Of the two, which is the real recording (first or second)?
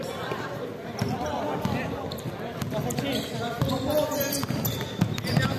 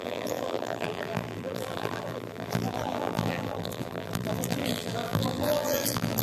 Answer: first